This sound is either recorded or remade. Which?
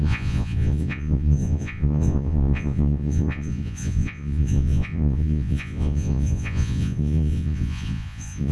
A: remade